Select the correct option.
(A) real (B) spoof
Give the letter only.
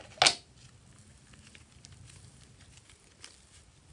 A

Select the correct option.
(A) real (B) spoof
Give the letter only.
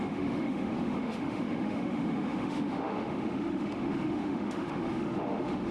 B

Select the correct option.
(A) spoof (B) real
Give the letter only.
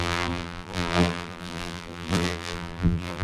A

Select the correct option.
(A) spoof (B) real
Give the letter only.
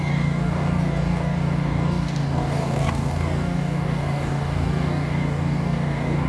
A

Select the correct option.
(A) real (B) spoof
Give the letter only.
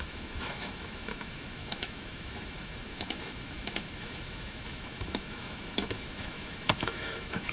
B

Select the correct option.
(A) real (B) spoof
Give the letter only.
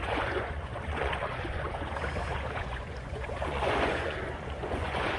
B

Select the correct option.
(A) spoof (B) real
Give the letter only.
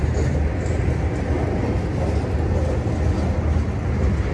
B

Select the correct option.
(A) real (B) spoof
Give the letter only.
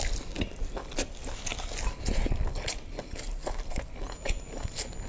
A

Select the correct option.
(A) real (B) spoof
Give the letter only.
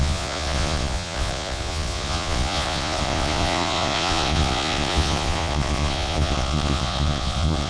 B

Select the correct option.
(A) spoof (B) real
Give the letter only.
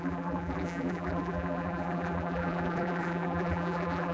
A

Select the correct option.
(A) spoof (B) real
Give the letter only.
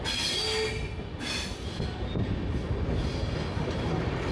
B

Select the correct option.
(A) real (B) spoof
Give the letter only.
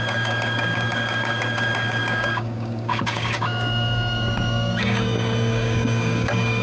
B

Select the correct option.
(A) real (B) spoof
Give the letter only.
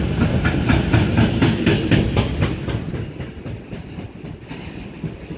A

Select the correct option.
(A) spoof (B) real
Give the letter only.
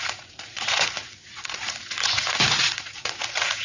A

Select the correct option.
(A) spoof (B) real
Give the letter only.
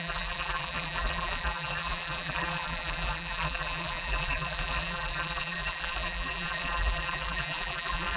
A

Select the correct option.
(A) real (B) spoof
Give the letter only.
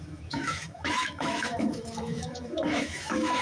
B